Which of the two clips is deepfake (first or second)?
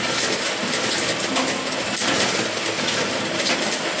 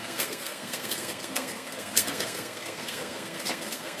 second